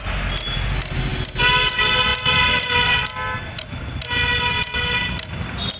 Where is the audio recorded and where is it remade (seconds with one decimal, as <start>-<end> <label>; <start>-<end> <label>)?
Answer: 0.0-5.8 recorded